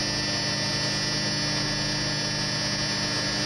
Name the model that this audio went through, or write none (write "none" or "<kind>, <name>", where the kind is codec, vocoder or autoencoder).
none